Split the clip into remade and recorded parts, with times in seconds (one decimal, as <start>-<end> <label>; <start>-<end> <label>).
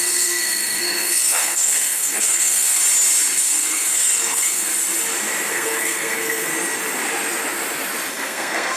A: 0.0-2.8 remade; 2.8-3.4 recorded; 3.4-4.7 remade; 4.7-5.5 recorded; 5.5-6.5 remade; 6.5-8.1 recorded; 8.1-8.8 remade